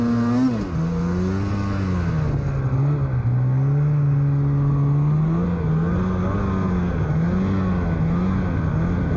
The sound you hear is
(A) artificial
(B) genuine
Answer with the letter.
B